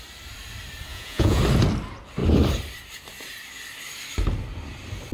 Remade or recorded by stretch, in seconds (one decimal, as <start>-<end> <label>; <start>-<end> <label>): 0.0-0.9 recorded; 0.9-1.4 remade; 1.4-5.1 recorded